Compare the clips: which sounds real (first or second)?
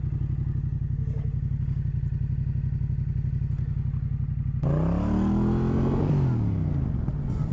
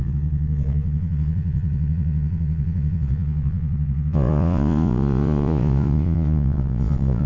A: first